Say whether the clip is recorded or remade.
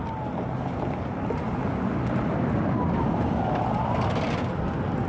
recorded